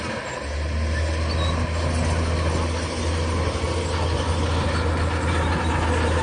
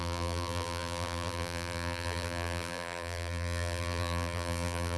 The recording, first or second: first